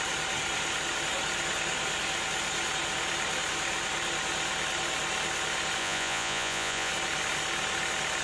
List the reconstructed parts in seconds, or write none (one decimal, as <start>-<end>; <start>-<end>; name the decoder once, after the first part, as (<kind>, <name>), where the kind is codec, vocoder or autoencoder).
5.8-6.9 (vocoder, Vocos)